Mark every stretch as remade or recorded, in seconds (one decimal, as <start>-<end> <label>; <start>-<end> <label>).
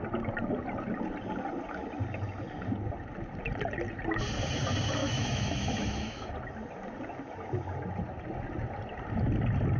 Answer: 0.0-5.0 recorded; 5.0-6.3 remade; 6.3-9.8 recorded